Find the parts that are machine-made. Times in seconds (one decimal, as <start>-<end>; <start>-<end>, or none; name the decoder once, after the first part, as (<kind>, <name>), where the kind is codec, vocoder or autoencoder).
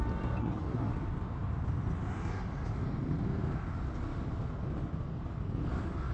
0.4-0.9 (codec, SNAC)